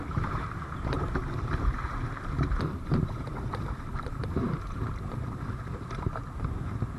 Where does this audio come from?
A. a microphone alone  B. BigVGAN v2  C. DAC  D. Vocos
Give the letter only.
B